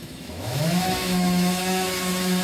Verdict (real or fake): fake